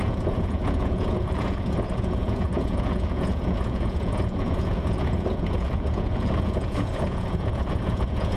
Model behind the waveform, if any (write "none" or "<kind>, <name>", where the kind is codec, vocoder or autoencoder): vocoder, Vocos